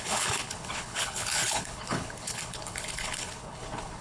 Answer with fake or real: fake